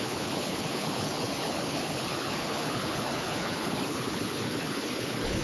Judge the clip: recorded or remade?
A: remade